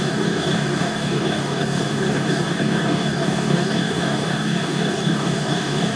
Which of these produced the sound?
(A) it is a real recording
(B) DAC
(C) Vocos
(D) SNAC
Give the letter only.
B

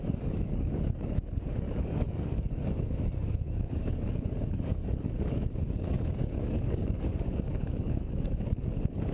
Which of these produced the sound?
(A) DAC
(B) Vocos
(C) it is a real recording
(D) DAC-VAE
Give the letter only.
A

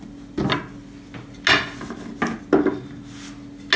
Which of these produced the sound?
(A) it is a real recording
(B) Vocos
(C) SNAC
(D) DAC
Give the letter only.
A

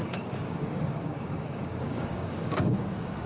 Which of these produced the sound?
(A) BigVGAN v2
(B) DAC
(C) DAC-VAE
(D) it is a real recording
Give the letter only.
B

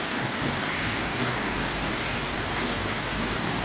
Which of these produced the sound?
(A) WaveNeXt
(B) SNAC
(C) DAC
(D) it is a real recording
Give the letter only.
C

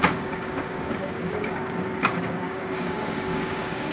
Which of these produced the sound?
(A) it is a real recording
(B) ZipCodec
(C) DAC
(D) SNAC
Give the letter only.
C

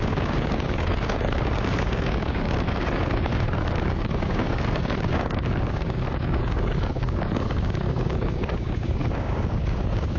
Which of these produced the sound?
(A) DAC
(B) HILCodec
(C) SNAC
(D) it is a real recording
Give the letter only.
A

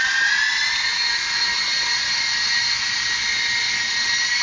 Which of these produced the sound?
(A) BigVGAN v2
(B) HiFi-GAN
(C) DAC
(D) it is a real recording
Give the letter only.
D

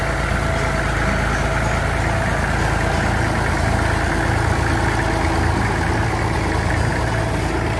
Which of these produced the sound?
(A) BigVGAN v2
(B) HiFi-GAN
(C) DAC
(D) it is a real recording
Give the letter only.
D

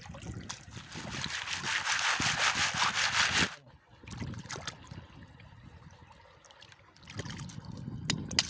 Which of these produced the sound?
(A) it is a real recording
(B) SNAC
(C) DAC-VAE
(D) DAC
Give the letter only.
A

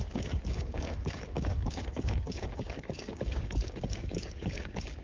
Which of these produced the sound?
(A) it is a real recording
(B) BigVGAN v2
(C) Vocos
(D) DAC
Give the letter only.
D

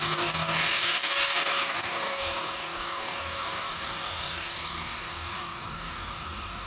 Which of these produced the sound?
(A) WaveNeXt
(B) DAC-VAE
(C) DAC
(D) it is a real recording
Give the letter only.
C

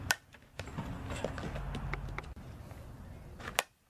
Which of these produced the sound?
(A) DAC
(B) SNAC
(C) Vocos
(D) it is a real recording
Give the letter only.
D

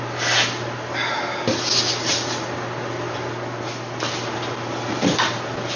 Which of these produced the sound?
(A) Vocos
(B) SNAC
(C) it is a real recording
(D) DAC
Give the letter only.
C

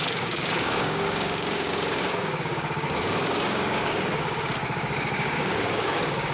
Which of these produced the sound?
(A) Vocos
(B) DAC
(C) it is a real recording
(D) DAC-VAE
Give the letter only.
B